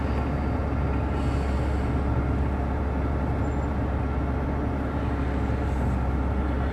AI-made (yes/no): no